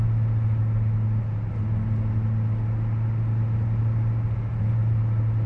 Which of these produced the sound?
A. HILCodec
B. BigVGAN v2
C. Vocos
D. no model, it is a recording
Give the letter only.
D